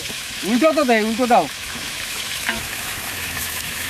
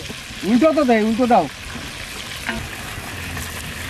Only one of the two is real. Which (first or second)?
second